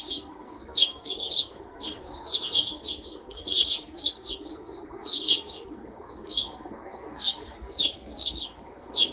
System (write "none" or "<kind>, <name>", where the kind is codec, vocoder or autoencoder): codec, SNAC